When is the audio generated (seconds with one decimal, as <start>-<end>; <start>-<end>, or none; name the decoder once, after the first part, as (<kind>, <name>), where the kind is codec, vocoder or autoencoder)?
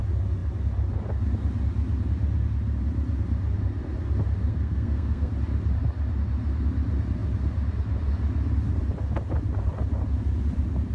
4.5-5.3 (codec, SNAC)